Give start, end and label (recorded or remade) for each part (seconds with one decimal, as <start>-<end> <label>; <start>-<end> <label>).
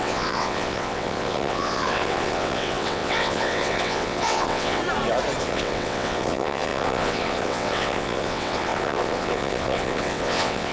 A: 0.0-4.8 remade; 4.8-5.4 recorded; 5.4-10.7 remade